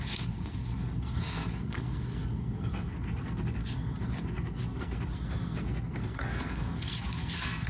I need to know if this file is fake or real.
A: fake